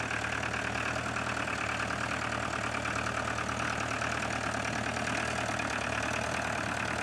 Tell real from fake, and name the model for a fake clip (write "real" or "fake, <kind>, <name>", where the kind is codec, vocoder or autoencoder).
real